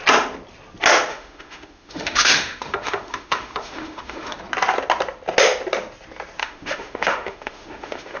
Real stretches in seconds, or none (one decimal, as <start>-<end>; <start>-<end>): 0.0-1.1; 4.4-6.4